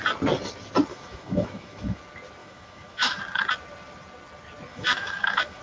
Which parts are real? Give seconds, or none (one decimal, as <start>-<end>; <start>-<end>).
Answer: 0.0-0.9; 2.0-2.4; 3.2-4.7

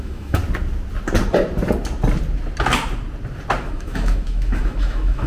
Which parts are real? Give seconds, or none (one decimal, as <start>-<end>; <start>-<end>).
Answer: 0.4-3.6